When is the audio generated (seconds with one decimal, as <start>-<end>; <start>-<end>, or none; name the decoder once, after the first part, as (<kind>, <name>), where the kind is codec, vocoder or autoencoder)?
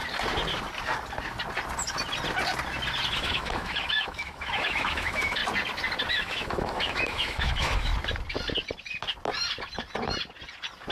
3.1-5.4 (autoencoder, DAC-VAE); 6.1-7.9